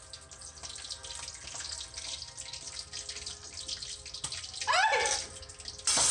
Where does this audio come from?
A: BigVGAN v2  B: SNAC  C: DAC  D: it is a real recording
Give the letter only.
D